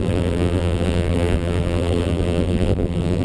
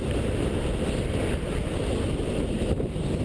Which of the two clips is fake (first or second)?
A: first